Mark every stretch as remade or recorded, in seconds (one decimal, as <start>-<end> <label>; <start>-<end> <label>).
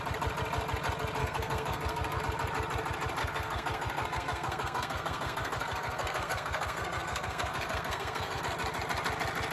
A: 0.0-1.2 recorded; 1.2-2.2 remade; 2.2-3.2 recorded; 3.2-8.4 remade; 8.4-9.5 recorded